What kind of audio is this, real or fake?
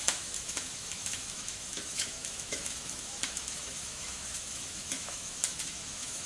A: fake